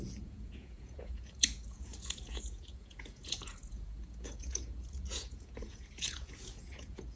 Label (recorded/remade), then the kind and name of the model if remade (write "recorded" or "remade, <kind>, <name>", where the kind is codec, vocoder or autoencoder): remade, vocoder, Vocos